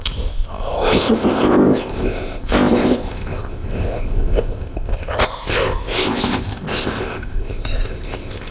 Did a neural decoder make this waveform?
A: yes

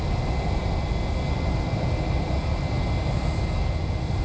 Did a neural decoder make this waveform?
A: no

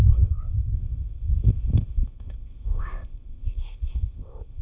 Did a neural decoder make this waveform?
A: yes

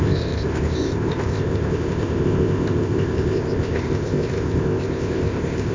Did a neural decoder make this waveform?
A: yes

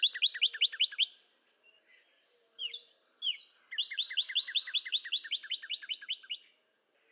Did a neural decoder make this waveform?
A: no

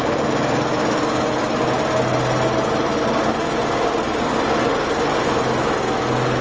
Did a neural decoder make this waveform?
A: no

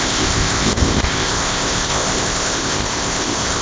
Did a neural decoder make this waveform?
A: yes